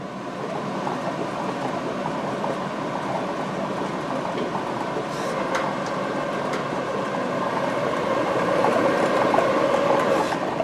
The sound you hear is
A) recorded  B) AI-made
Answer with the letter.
A